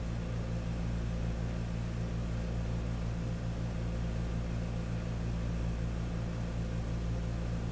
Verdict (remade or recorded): recorded